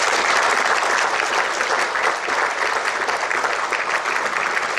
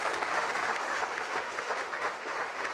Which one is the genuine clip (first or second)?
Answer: first